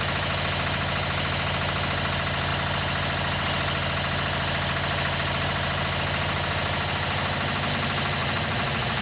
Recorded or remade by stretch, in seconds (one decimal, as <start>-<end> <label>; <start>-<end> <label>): 0.0-8.2 recorded; 8.2-9.0 remade